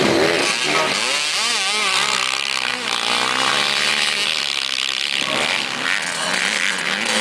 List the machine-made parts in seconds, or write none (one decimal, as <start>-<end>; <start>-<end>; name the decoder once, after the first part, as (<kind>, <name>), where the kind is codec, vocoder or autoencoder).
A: none